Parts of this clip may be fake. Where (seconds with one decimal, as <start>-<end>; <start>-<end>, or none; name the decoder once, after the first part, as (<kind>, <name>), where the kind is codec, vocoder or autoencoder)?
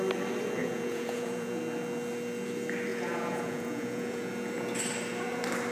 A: 0.6-1.6 (vocoder, Vocos); 2.9-4.3